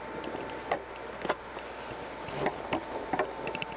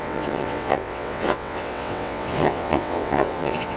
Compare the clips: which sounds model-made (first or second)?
second